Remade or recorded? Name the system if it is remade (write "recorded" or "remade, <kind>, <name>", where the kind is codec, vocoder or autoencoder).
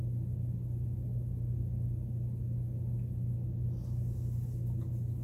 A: recorded